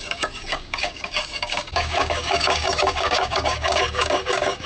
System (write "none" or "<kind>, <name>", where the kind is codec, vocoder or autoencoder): codec, DAC